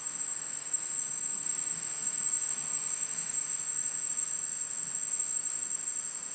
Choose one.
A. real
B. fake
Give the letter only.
B